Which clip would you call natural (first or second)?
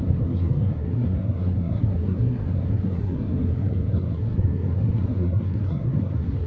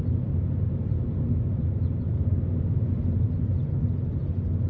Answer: second